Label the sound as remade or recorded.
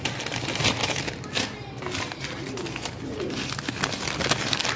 recorded